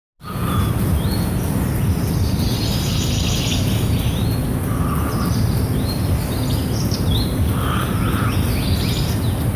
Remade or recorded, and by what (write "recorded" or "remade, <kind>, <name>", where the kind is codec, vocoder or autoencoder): recorded